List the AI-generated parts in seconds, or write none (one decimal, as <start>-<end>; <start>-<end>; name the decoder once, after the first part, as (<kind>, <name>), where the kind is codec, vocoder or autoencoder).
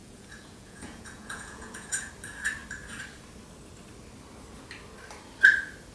0.0-2.1 (vocoder, Vocos)